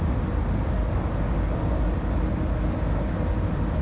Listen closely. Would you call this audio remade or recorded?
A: recorded